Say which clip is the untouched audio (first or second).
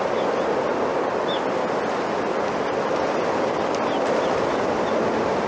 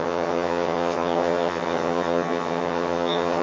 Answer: first